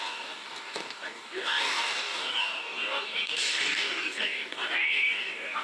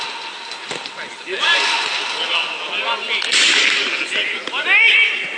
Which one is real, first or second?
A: second